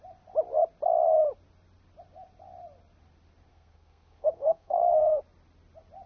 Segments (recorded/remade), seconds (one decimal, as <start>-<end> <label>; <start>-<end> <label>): 0.0-3.5 recorded; 3.5-5.2 remade; 5.2-6.1 recorded